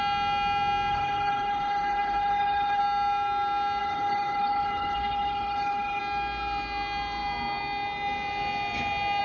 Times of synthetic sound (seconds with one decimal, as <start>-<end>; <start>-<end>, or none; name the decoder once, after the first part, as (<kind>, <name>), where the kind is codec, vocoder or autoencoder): 0.9-2.8 (codec, HILCodec); 3.8-6.0